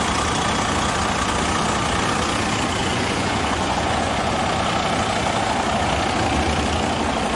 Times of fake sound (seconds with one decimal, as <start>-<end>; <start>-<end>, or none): 2.8-4.3